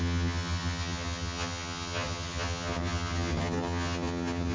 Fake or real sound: fake